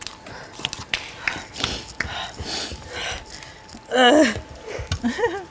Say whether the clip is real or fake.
real